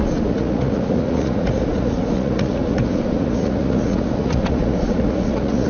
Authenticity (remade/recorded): remade